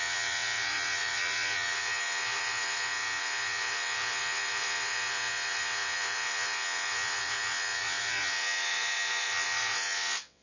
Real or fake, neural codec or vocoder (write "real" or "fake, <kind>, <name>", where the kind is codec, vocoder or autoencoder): fake, vocoder, WaveNeXt